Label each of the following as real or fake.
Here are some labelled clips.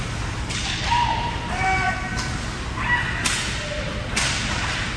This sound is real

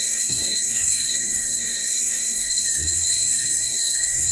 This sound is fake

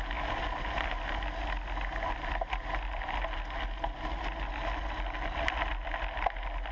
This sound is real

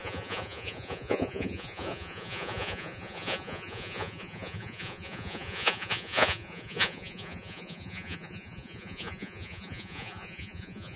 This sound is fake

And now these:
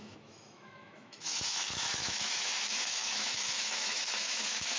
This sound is fake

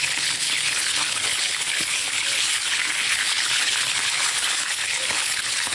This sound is fake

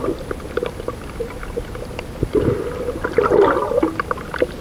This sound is real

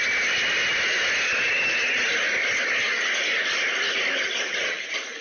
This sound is real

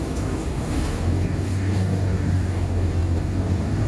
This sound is fake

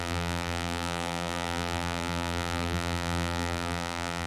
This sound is fake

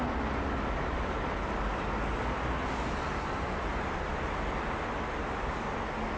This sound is real